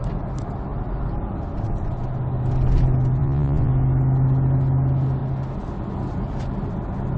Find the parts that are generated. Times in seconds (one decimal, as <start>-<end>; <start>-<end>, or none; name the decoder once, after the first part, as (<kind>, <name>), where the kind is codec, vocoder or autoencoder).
3.2-3.7 (vocoder, Vocos)